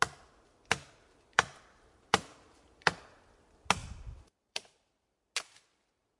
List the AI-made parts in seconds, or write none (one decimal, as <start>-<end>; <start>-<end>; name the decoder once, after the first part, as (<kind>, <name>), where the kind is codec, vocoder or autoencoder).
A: 1.3-3.2 (vocoder, BigVGAN v2); 3.8-5.1